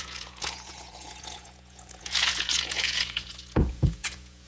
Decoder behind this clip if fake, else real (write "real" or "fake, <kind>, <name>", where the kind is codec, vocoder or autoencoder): fake, vocoder, Vocos